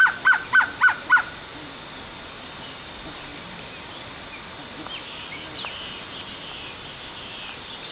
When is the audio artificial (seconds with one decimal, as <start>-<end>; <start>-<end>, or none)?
none

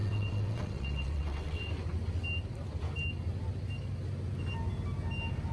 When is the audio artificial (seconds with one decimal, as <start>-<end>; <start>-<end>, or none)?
0.0-1.7

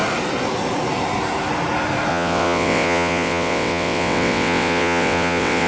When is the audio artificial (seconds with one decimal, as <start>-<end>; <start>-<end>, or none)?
2.1-5.7